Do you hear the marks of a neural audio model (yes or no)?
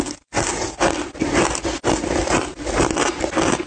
no